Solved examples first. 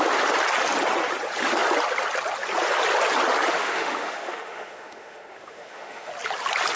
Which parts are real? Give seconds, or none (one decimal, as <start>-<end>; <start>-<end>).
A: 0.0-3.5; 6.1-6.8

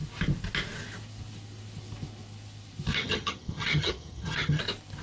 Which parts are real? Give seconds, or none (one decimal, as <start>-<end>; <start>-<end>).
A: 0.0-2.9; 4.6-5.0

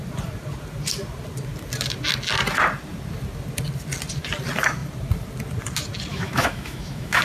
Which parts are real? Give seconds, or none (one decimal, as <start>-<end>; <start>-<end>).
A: 0.0-6.1

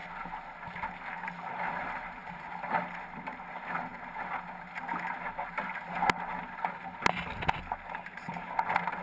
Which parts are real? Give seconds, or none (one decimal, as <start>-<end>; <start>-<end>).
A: 0.0-9.0

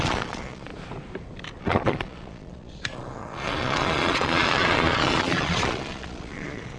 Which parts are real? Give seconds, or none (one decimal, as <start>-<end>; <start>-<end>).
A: 0.7-1.6

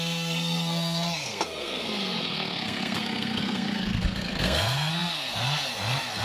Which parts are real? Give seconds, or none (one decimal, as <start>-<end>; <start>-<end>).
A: none

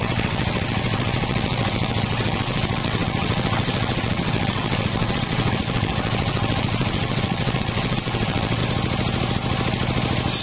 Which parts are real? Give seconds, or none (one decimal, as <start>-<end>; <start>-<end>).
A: 8.6-10.4